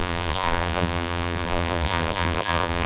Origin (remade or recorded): remade